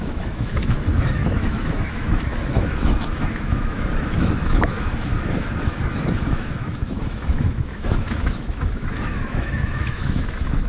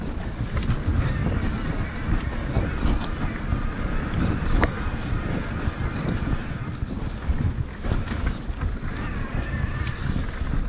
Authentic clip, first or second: second